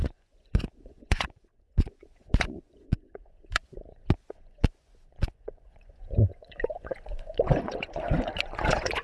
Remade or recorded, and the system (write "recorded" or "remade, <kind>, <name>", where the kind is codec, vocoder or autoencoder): remade, vocoder, Vocos